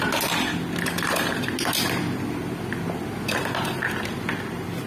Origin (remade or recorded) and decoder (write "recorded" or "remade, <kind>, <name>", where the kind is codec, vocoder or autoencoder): recorded